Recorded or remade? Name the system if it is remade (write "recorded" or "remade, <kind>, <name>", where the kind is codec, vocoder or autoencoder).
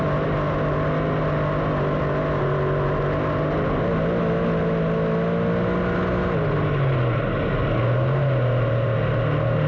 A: recorded